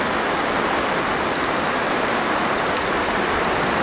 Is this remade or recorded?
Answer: recorded